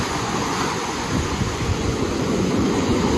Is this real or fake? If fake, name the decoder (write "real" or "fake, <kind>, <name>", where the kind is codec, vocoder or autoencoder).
fake, vocoder, Vocos